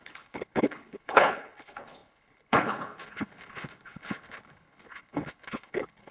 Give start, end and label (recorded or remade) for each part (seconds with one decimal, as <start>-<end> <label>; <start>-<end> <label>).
0.0-6.1 remade